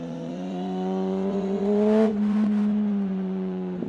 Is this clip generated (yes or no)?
yes